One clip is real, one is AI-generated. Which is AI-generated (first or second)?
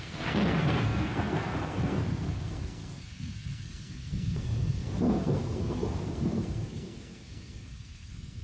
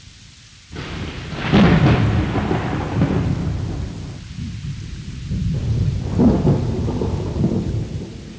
first